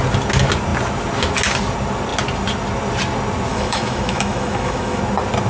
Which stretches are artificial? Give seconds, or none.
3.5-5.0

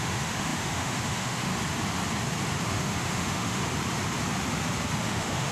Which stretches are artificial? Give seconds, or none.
0.0-1.5; 2.6-3.6; 5.1-5.5

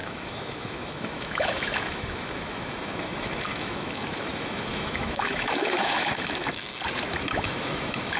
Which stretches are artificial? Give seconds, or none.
0.0-6.7; 7.2-8.2